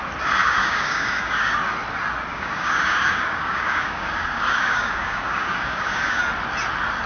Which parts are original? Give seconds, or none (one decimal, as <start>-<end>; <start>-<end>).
0.0-0.4; 1.5-2.3; 6.2-7.1

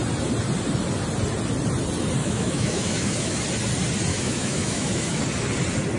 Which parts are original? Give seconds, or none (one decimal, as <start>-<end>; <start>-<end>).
0.0-2.2; 3.4-4.1; 5.2-6.0

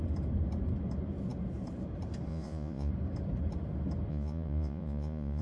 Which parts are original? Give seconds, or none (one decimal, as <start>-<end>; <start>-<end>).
0.0-2.3; 2.9-4.1

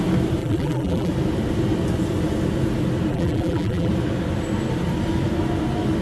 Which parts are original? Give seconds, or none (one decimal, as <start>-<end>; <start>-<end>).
0.0-0.4; 1.1-3.1; 3.9-6.0

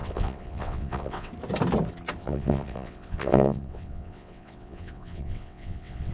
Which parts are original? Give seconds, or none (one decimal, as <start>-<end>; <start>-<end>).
1.3-2.2

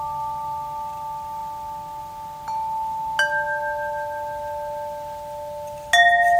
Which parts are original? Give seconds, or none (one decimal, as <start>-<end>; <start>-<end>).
0.0-6.4

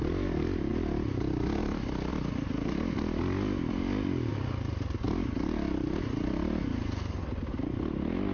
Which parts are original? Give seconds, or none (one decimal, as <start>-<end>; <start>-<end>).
0.0-8.3